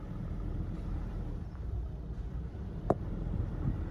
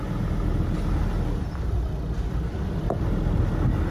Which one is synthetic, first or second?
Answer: first